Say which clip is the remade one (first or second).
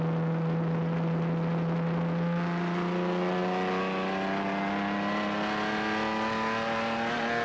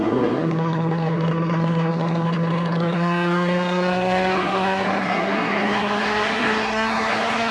second